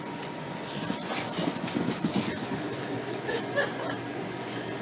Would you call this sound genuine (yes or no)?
no